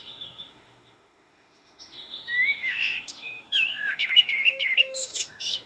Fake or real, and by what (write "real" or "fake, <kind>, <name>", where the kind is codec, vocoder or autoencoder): fake, autoencoder, DAC-VAE